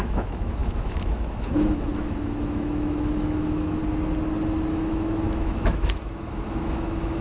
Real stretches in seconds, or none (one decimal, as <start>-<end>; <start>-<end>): 3.8-4.7